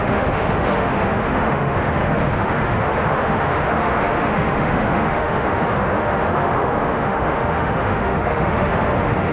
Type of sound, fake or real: fake